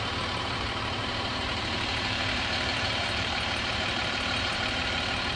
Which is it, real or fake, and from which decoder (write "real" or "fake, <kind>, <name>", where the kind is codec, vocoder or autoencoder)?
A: fake, vocoder, BigVGAN v2